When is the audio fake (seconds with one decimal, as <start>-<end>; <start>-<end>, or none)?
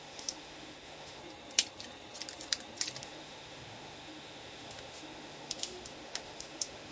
0.0-1.2; 3.0-6.9